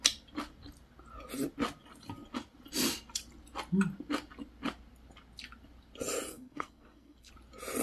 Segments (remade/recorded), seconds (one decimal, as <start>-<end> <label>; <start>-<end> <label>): 0.0-6.3 recorded; 6.3-7.3 remade; 7.3-7.8 recorded